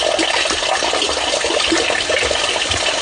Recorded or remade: recorded